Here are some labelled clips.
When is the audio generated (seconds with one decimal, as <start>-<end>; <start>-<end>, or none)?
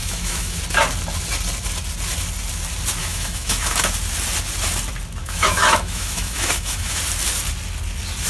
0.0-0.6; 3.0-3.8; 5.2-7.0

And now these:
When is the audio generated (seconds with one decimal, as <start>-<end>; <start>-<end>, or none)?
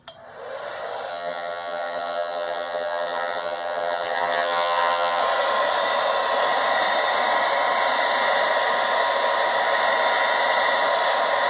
1.1-5.2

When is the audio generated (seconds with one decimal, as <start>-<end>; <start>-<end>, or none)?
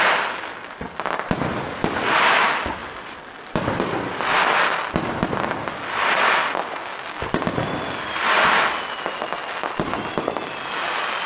2.8-4.2; 9.4-10.2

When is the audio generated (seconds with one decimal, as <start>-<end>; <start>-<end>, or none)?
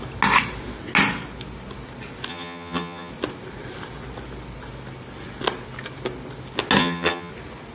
2.3-3.1; 6.8-7.3